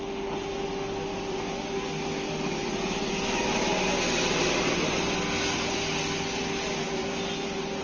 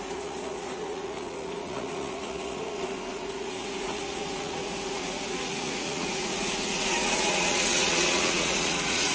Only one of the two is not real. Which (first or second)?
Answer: second